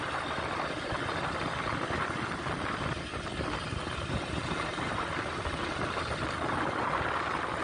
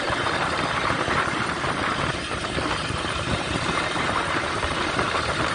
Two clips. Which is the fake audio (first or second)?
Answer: second